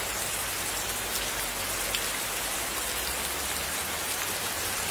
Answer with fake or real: real